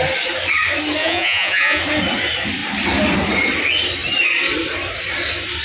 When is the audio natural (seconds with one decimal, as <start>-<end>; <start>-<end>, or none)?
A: 0.0-1.0; 1.8-5.6